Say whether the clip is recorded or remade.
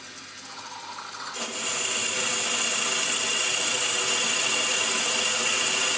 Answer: recorded